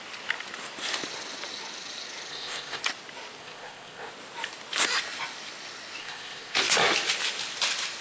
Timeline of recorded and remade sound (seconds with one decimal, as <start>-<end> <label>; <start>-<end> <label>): 0.0-2.3 recorded; 2.3-2.8 remade; 2.8-3.4 recorded; 3.4-4.1 remade; 4.1-6.0 recorded; 6.0-6.6 remade; 6.6-8.0 recorded

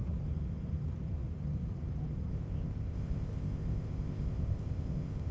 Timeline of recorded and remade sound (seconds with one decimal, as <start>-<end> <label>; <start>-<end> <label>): 0.0-2.3 recorded; 2.3-5.3 remade